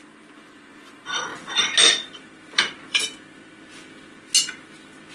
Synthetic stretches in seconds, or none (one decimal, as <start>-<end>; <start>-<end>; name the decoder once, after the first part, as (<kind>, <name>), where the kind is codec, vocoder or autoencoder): none